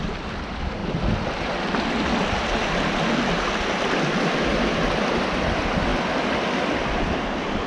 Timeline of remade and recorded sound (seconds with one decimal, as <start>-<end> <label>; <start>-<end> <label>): 0.0-7.7 recorded